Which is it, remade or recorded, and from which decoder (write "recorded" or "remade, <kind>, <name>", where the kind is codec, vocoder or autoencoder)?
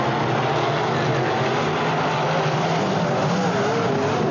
recorded